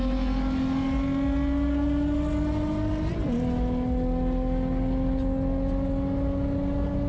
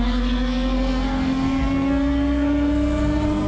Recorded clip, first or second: first